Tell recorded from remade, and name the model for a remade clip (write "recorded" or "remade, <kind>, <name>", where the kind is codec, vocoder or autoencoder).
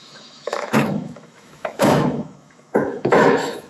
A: remade, autoencoder, DAC-VAE